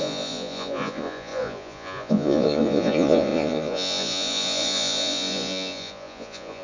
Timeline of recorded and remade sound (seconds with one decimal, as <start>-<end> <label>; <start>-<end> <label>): 0.0-6.6 remade